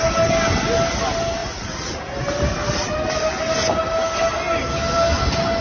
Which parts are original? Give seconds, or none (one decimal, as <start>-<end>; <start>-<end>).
0.0-1.4; 2.0-5.6